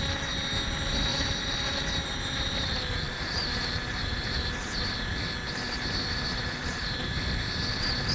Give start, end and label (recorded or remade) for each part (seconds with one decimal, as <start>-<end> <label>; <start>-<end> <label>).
0.0-1.1 recorded; 1.1-4.8 remade; 4.8-6.6 recorded; 6.6-7.2 remade; 7.2-8.1 recorded